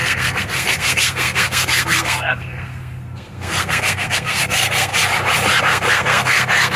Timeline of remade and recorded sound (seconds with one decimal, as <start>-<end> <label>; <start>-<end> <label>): 0.0-4.9 remade; 4.9-5.6 recorded; 5.6-6.8 remade